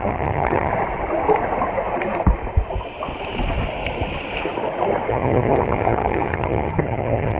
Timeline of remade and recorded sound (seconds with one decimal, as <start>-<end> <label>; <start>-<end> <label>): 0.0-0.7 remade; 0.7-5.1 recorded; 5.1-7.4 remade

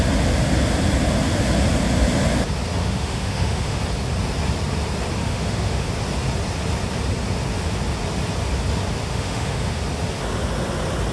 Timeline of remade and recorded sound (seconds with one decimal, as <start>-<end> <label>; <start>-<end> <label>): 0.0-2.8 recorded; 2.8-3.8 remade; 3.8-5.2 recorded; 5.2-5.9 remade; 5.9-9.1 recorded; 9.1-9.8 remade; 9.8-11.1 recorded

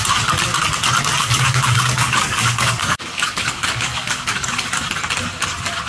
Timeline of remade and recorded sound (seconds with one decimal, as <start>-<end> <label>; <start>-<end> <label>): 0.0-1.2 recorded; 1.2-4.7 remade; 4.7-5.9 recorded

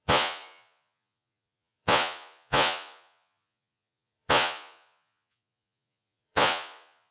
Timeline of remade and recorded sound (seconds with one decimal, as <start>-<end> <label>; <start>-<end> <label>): 0.0-7.1 remade

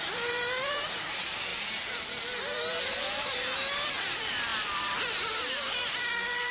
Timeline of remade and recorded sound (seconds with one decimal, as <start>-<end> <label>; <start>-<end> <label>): 0.0-1.5 remade; 1.5-4.0 recorded; 4.0-6.5 remade

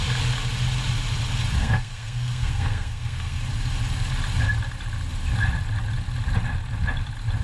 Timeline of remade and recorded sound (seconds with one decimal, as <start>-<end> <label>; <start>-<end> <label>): 0.0-1.6 recorded; 1.6-3.4 remade; 3.4-7.4 recorded